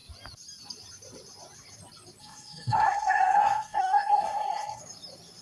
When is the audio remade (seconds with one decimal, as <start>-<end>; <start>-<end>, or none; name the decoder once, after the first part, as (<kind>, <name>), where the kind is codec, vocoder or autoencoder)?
2.2-4.8 (codec, SNAC)